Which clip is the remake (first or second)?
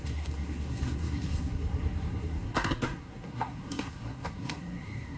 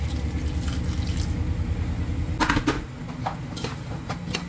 first